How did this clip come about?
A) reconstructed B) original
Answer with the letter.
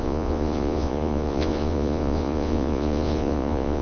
A